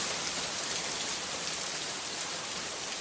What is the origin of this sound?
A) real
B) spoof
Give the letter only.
A